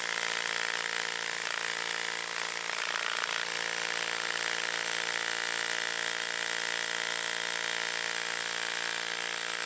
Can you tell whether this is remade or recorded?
recorded